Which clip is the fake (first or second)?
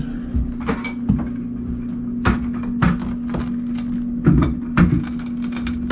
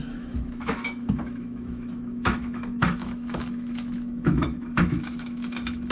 second